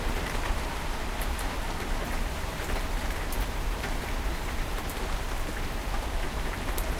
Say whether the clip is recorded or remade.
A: remade